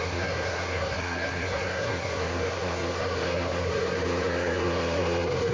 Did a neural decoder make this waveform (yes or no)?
yes